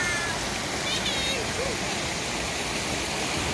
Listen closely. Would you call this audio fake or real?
real